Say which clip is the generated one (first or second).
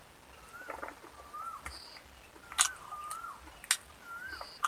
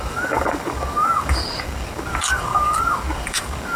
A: second